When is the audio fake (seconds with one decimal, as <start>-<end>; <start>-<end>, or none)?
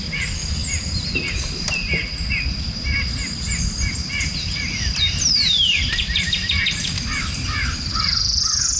none